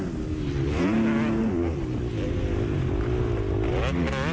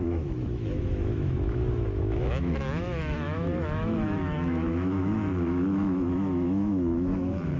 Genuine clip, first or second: first